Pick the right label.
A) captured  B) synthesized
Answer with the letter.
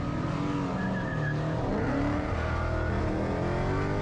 A